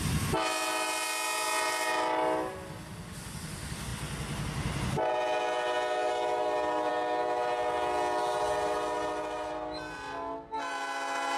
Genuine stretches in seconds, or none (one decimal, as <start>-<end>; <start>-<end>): 0.0-11.4